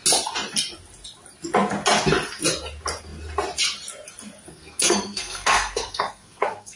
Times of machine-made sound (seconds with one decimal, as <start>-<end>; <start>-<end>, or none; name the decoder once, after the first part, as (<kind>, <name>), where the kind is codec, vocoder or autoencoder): 4.5-6.8 (codec, SNAC)